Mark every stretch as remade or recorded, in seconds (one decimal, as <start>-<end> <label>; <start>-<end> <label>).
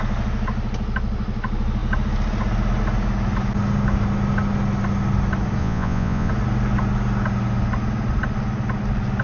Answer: 0.0-5.6 recorded; 5.6-6.3 remade; 6.3-9.2 recorded